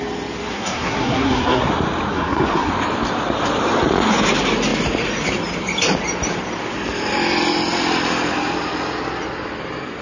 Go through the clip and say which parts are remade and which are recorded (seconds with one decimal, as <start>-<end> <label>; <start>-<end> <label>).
0.0-0.5 recorded; 0.5-1.7 remade; 1.7-2.1 recorded; 2.1-2.7 remade; 2.7-10.0 recorded